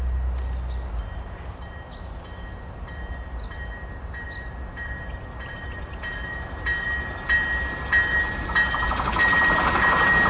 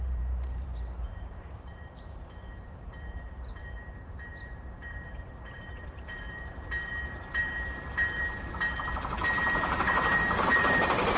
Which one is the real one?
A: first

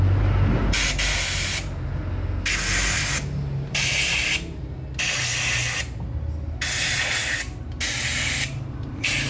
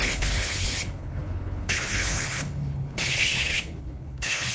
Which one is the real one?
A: first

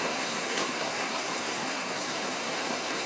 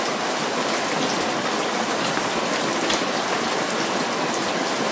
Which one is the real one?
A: second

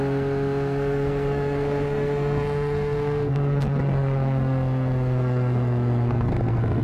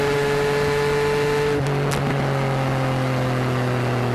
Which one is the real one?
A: second